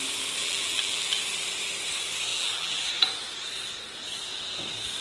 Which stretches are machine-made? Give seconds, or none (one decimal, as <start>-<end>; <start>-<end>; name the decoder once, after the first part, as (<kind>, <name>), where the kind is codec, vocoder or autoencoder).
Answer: 0.4-1.2 (vocoder, BigVGAN v2); 2.3-2.9